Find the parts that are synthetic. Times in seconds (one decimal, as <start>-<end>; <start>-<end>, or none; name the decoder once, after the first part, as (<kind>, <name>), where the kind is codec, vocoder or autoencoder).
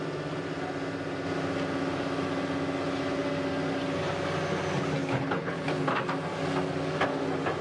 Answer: 5.0-5.9 (codec, HILCodec)